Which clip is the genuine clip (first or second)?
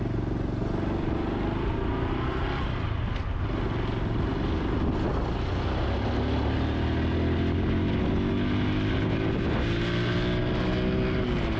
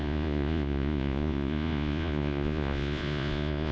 first